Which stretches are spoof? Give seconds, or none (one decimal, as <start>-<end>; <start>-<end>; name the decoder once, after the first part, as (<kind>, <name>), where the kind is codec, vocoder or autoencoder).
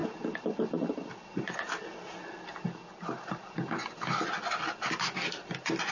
none